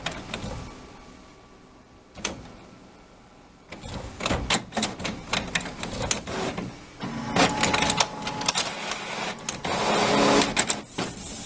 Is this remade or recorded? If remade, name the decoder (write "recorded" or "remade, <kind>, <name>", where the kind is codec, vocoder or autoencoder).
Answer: recorded